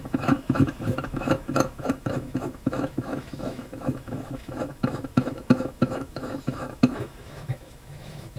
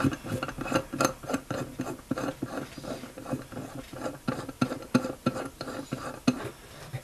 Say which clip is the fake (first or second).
first